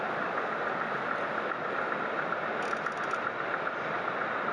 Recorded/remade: recorded